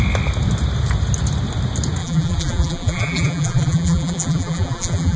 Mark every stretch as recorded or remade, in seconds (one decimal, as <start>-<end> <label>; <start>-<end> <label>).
0.0-2.0 recorded; 2.0-5.2 remade